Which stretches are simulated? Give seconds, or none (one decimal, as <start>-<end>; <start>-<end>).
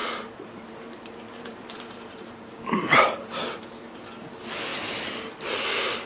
0.0-4.7; 5.6-6.1